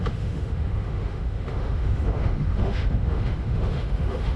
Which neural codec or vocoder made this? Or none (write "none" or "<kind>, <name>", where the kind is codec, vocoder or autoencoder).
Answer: autoencoder, DAC-VAE